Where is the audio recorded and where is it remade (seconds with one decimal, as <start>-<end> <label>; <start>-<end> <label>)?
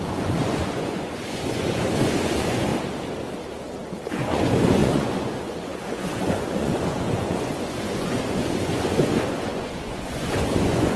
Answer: 0.0-2.7 remade; 2.7-4.1 recorded; 4.1-11.0 remade